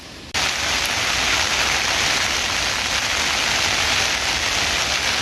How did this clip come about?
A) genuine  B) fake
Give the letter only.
A